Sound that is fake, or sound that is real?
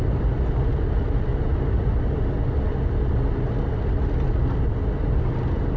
real